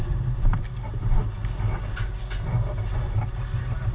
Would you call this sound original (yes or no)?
yes